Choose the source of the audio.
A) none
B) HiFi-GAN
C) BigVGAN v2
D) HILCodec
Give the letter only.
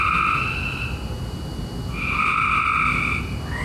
A